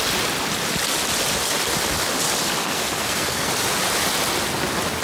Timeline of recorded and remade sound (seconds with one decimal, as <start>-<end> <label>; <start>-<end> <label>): 0.0-2.6 recorded; 2.6-3.5 remade; 3.5-5.0 recorded